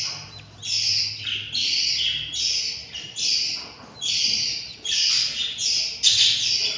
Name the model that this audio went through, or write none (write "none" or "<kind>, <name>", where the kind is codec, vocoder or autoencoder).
none